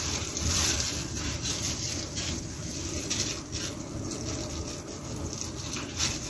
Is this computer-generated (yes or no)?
no